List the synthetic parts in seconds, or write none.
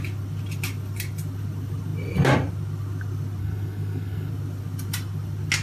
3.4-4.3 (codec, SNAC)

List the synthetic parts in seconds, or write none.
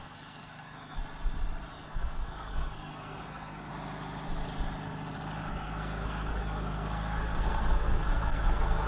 0.0-1.0 (codec, SNAC); 1.7-3.7; 5.5-8.9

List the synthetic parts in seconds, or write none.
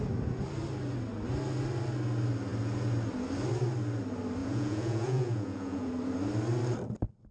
4.4-5.9 (vocoder, Vocos)